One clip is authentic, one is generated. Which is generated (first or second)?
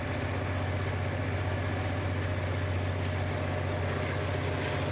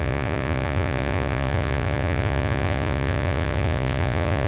second